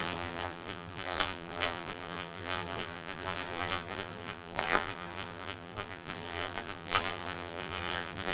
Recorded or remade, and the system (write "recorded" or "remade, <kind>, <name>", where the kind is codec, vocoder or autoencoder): remade, vocoder, BigVGAN v2